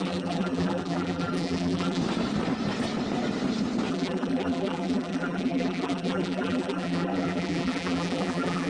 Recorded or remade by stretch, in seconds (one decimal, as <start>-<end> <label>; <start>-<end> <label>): 0.0-2.0 remade; 2.0-3.9 recorded; 3.9-8.7 remade